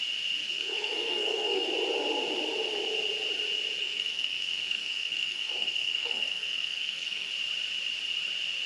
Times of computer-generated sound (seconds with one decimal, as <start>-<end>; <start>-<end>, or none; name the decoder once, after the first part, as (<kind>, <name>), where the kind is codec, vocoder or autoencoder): 0.4-1.7 (codec, SNAC); 3.8-7.3